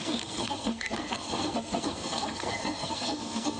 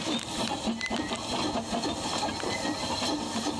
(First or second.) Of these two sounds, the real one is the second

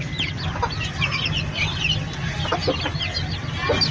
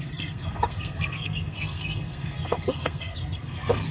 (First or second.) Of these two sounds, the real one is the first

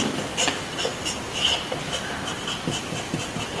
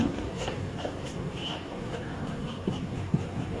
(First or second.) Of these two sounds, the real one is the first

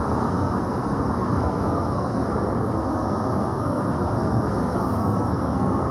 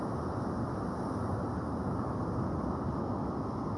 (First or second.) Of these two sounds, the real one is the second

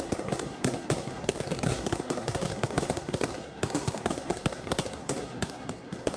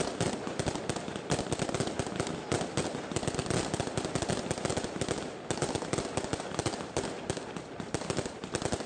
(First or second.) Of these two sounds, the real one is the second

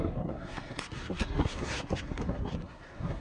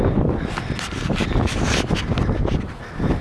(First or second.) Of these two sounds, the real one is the second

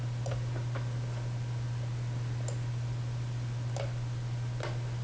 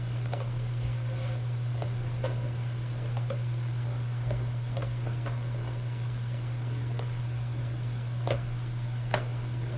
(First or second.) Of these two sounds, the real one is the first